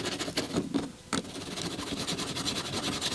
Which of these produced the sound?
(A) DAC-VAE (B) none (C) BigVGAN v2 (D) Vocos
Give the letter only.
B